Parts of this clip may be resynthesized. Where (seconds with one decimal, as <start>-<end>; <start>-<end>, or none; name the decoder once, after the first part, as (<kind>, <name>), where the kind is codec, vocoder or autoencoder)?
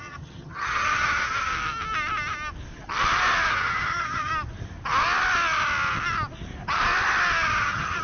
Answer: 0.0-1.5 (vocoder, HiFi-GAN); 3.5-4.3; 7.6-8.0